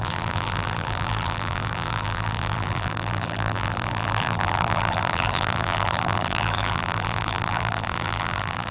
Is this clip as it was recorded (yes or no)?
no